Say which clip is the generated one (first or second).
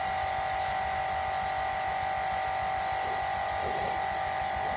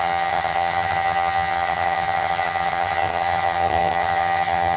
second